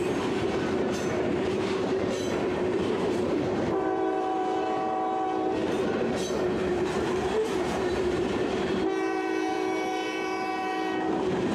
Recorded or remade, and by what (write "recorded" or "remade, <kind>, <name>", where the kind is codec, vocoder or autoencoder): remade, vocoder, BigVGAN v2